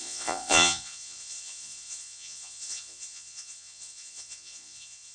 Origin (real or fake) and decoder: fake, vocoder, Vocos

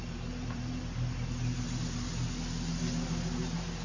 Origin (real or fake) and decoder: real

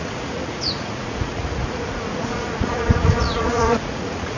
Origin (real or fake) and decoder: fake, vocoder, Vocos